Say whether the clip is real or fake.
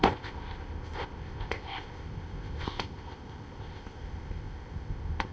fake